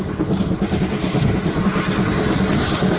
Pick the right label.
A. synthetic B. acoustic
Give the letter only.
B